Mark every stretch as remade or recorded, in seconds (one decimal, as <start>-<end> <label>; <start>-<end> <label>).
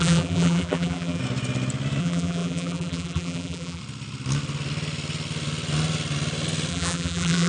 0.0-1.2 remade; 1.2-2.0 recorded; 2.0-3.8 remade; 3.8-6.7 recorded; 6.7-7.5 remade